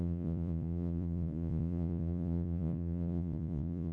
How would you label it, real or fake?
fake